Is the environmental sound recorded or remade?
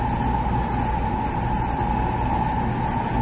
recorded